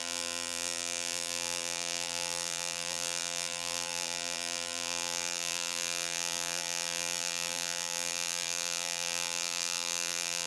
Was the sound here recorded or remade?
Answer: remade